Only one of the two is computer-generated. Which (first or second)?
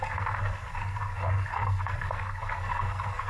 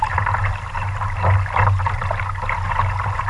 first